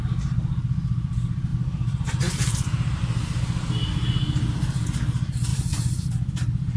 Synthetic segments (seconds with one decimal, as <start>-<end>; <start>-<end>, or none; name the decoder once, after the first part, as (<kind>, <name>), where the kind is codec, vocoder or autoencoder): 1.5-3.0 (vocoder, BigVGAN v2); 5.5-6.1